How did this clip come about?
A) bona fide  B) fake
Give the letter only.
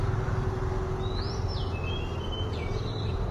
A